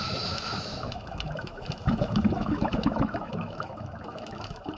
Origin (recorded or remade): remade